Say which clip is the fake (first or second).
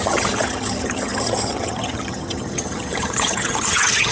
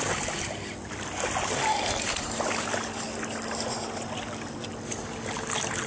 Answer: first